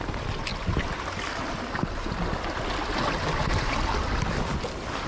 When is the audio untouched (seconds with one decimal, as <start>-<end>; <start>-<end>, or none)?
0.0-5.1